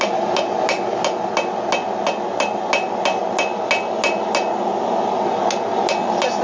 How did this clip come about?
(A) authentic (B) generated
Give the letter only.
A